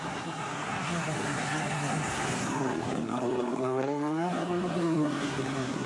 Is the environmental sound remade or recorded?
remade